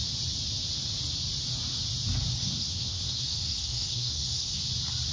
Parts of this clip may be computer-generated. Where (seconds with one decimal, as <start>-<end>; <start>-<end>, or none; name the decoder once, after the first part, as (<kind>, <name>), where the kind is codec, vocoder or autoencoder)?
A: 2.3-4.6 (codec, SNAC)